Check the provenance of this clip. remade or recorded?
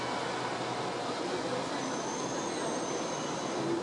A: recorded